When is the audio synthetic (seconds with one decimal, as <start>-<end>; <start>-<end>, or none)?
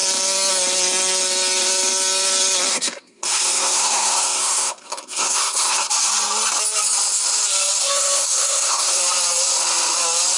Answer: 2.7-5.9; 7.8-9.0